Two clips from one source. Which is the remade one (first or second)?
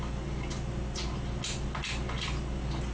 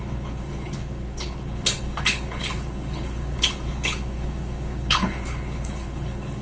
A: second